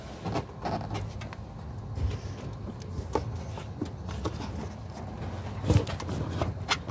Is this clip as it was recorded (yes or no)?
yes